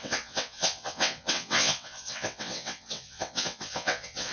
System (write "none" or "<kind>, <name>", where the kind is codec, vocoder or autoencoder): vocoder, WaveNeXt